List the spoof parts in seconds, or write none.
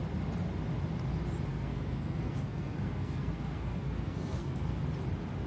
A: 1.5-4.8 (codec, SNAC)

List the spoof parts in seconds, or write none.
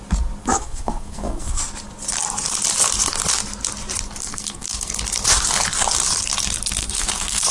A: 0.4-1.6 (codec, SNAC); 4.2-4.9; 6.8-7.5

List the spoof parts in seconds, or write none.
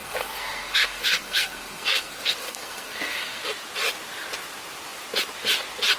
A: 0.0-3.4 (codec, SNAC)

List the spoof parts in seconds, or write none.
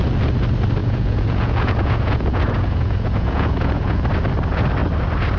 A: 0.8-4.0 (vocoder, Vocos)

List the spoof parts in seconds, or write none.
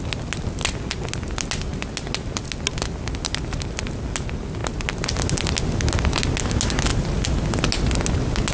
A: none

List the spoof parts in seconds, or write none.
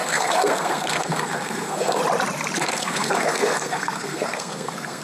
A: 0.0-2.0 (codec, SNAC); 2.6-5.0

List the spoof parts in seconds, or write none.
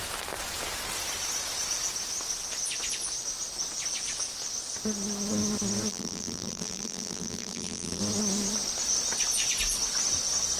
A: 5.9-8.0 (vocoder, BigVGAN v2)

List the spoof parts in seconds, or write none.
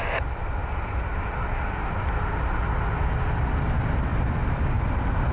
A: none